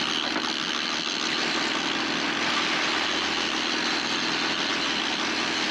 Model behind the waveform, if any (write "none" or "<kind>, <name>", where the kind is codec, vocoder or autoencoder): none